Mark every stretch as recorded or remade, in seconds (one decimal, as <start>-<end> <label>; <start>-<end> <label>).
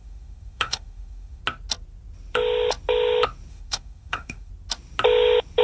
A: 0.0-1.4 remade; 1.4-3.5 recorded; 3.5-4.5 remade; 4.5-5.6 recorded